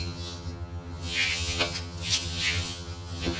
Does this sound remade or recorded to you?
remade